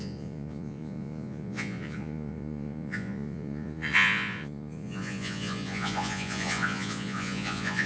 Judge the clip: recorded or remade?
remade